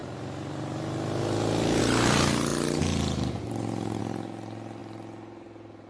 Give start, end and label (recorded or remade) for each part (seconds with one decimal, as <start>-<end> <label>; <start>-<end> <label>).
0.0-5.9 recorded